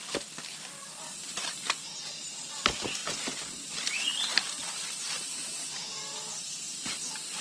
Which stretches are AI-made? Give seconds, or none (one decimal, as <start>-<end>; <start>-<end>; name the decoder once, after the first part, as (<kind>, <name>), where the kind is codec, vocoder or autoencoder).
4.3-5.4 (vocoder, BigVGAN v2)